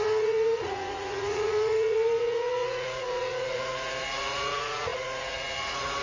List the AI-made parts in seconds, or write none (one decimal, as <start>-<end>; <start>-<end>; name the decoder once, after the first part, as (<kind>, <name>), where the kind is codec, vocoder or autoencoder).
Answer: 0.0-6.0 (vocoder, Vocos)